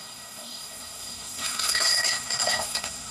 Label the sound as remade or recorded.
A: remade